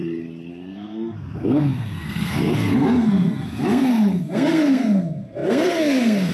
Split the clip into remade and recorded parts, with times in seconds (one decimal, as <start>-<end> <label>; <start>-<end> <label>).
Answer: 0.0-0.5 recorded; 0.5-6.3 remade